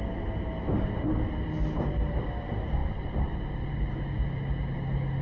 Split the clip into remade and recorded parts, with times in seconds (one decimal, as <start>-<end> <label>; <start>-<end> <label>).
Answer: 0.0-2.8 recorded; 2.8-4.0 remade; 4.0-5.2 recorded